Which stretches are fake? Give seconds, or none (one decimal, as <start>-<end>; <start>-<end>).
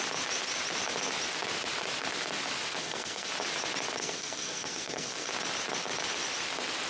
2.8-3.3; 4.0-5.3